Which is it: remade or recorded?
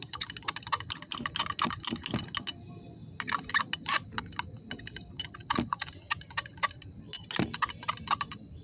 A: recorded